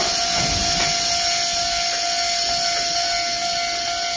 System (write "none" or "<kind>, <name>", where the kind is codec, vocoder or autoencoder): none